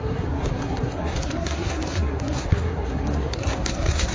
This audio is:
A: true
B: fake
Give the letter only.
B